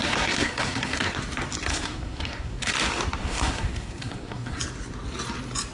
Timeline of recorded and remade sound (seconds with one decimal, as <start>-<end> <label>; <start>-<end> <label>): 0.0-1.2 remade; 1.2-1.7 recorded; 1.7-2.7 remade; 2.7-3.2 recorded; 3.2-4.6 remade; 4.6-5.7 recorded